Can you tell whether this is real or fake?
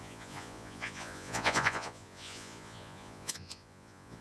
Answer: fake